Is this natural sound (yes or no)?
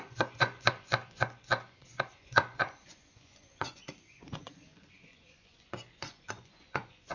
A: no